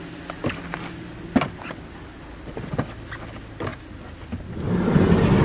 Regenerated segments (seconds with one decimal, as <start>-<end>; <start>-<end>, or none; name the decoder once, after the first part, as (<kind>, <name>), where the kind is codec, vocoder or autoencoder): none

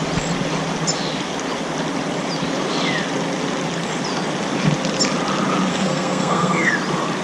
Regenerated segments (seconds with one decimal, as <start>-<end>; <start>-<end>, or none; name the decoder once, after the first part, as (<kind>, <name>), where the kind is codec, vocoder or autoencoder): 5.7-6.7 (codec, SNAC)

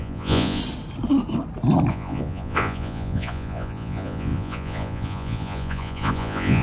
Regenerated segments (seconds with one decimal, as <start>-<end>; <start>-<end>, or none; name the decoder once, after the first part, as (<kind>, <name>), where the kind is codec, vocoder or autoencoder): 0.0-0.6 (vocoder, Vocos); 1.9-6.6